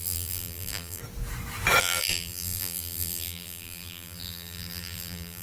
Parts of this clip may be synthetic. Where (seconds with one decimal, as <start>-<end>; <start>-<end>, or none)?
0.0-1.0; 1.8-5.4